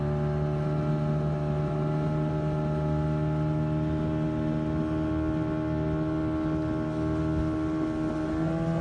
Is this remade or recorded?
recorded